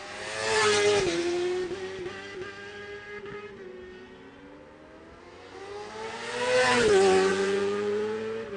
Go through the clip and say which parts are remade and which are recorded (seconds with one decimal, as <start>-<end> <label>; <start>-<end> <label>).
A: 0.0-7.3 recorded; 7.3-8.2 remade; 8.2-8.6 recorded